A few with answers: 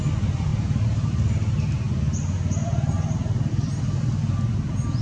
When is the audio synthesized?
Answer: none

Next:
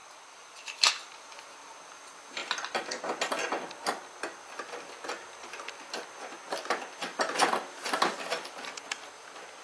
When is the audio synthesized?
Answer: none

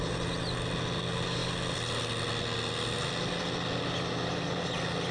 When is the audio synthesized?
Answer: none

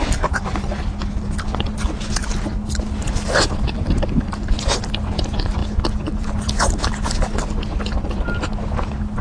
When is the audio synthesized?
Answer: none

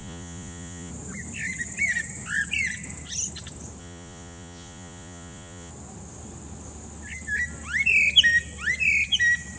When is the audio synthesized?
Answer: 0.0-0.9 (vocoder, Vocos); 3.8-5.7

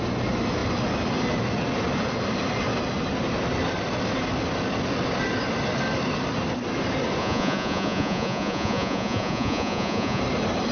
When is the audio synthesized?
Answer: 7.2-10.2 (vocoder, Vocos)

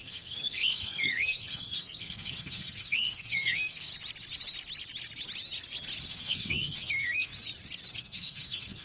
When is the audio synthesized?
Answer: 0.0-3.9 (codec, SNAC); 6.1-7.3; 8.0-8.8